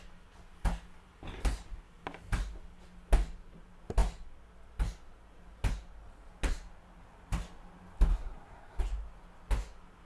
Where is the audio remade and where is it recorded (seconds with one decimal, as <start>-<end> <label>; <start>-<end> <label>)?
0.0-8.1 recorded; 8.1-8.8 remade; 8.8-10.1 recorded